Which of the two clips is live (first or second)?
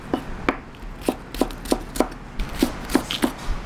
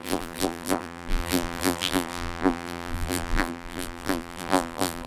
first